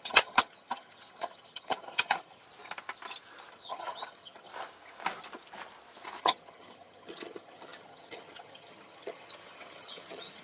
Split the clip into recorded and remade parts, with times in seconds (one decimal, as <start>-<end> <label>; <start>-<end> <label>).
0.0-2.4 remade; 2.4-3.5 recorded; 3.5-4.5 remade; 4.5-6.2 recorded; 6.2-10.4 remade